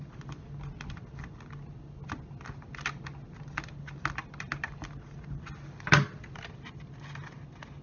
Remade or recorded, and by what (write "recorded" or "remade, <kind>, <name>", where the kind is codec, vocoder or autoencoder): recorded